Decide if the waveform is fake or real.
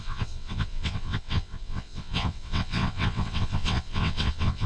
fake